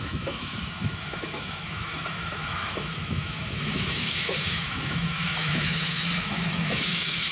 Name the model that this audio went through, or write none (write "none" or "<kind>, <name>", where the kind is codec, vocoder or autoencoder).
autoencoder, DAC-VAE